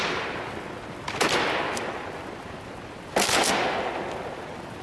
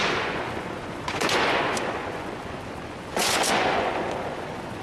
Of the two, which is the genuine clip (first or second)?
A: first